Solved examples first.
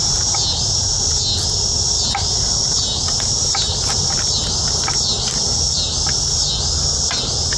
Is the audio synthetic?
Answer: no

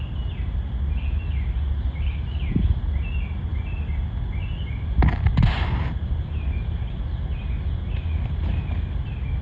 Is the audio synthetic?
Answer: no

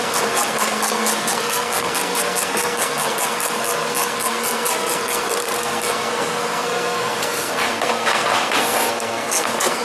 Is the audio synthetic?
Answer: yes